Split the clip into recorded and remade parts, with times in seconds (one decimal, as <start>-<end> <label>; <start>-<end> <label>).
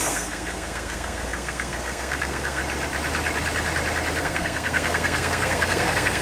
0.0-2.6 remade; 2.6-4.2 recorded; 4.2-6.2 remade